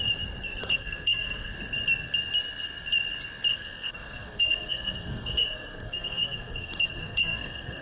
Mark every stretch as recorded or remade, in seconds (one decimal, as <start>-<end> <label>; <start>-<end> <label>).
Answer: 0.0-0.6 recorded; 0.6-1.5 remade; 1.5-3.5 recorded; 3.5-7.8 remade